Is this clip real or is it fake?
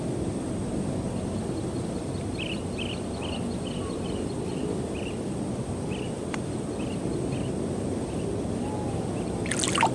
real